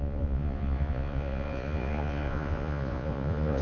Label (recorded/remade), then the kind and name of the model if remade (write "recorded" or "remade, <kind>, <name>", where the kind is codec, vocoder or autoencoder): remade, vocoder, Vocos